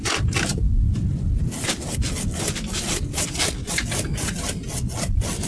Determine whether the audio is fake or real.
real